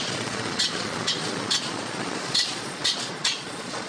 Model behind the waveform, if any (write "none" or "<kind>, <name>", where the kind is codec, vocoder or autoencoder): vocoder, Vocos